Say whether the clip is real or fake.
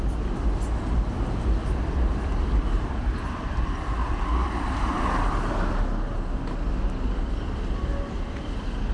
real